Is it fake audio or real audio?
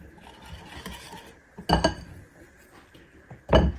real